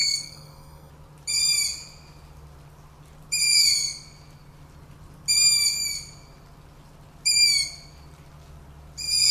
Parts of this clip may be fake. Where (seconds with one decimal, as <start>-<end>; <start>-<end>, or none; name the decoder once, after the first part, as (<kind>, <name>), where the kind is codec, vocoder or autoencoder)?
0.0-0.9 (codec, SNAC)